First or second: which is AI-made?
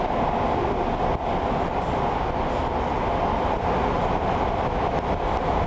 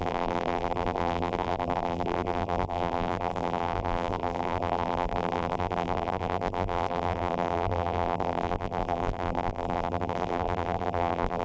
second